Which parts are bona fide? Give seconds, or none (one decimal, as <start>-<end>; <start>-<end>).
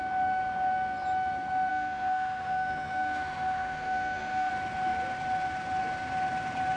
0.0-1.7; 4.5-6.8